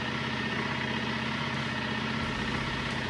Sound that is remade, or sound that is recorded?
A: recorded